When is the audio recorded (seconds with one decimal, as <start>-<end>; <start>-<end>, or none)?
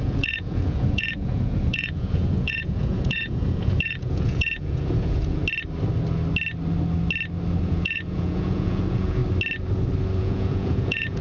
5.4-7.6; 9.2-10.2